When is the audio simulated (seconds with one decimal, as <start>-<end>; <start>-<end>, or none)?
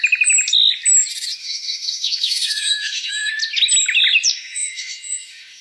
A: 1.4-3.3; 4.3-5.6